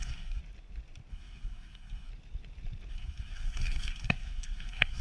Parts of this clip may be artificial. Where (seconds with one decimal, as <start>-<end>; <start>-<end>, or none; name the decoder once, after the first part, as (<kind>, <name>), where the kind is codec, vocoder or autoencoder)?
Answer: 0.0-0.4 (codec, SNAC); 1.1-2.1; 2.9-5.0